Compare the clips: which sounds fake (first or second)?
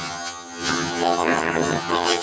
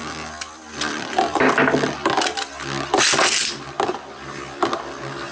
first